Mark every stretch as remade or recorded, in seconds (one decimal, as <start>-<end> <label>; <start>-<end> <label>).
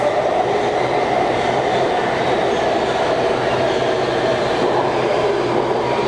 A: 0.0-6.1 recorded